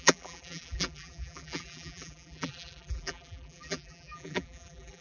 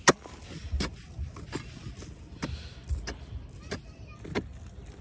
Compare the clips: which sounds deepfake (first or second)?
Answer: first